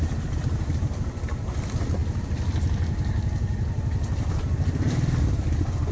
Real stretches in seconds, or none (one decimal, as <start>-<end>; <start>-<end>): none